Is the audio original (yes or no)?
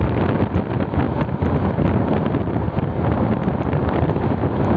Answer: yes